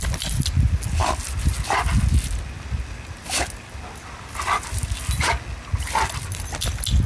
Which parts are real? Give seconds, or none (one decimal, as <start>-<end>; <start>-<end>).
0.0-7.1